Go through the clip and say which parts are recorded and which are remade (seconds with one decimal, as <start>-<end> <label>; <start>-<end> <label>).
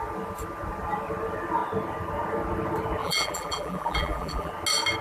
0.0-3.0 recorded; 3.0-4.5 remade; 4.5-5.0 recorded